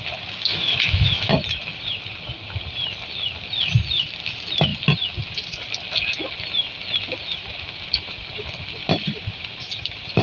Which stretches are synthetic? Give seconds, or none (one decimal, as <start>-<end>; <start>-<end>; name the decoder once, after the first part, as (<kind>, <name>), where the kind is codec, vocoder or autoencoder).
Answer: 0.5-1.3 (autoencoder, DAC-VAE)